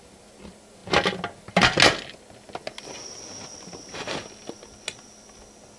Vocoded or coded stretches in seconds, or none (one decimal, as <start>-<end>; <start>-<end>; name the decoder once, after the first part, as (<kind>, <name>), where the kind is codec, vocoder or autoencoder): none